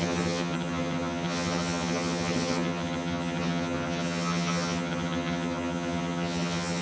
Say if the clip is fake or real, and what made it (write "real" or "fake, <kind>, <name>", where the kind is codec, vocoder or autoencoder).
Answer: fake, vocoder, HiFi-GAN